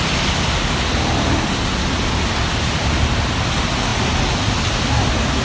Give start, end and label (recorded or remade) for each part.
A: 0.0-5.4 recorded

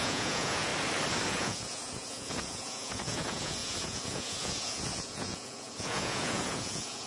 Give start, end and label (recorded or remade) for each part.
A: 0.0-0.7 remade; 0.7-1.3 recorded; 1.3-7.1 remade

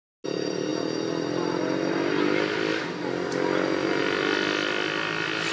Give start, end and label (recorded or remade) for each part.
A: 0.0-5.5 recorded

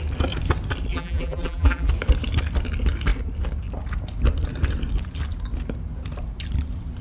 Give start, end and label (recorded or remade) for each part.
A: 0.0-0.9 recorded; 0.9-1.9 remade; 1.9-7.0 recorded

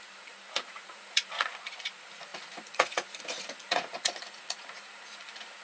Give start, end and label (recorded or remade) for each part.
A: 0.0-5.6 remade

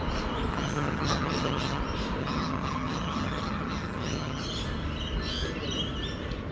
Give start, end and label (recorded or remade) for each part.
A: 0.0-0.5 recorded; 0.5-1.8 remade; 1.8-2.2 recorded; 2.2-4.4 remade; 4.4-6.5 recorded

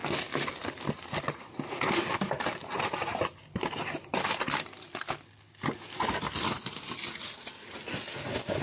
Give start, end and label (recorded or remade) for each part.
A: 0.0-8.6 recorded

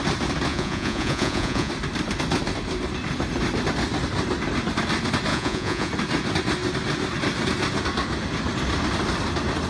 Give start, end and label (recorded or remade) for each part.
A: 0.0-0.5 recorded; 0.5-1.7 remade; 1.7-5.3 recorded; 5.3-5.9 remade; 5.9-9.7 recorded